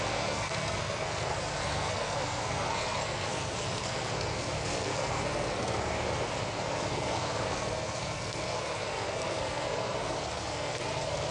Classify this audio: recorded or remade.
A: remade